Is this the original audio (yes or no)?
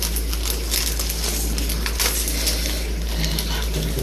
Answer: yes